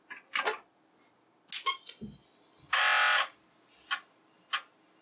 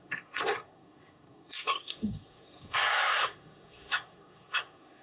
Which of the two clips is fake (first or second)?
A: second